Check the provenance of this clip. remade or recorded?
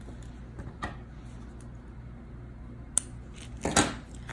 recorded